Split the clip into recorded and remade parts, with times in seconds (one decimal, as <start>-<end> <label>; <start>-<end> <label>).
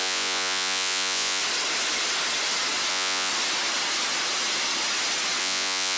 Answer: 0.0-1.4 remade; 1.4-2.9 recorded; 2.9-3.3 remade; 3.3-5.4 recorded; 5.4-6.0 remade